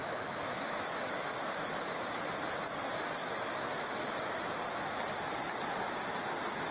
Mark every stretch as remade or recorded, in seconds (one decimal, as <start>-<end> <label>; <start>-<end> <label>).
0.0-1.7 remade; 1.7-3.2 recorded; 3.2-4.1 remade; 4.1-6.7 recorded